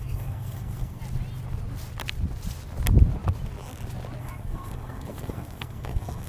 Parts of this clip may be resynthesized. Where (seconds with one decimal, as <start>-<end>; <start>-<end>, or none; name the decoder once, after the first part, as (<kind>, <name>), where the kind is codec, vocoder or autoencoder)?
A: 0.0-1.0 (codec, SNAC); 4.2-6.3